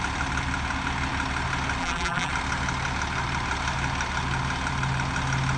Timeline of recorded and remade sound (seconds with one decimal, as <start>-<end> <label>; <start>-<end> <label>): 0.0-1.8 recorded; 1.8-2.3 remade; 2.3-5.6 recorded